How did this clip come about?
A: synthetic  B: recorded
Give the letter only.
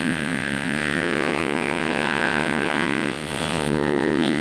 A